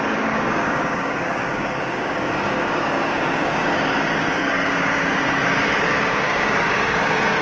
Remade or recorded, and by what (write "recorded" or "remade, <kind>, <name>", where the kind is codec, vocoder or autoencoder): remade, codec, DAC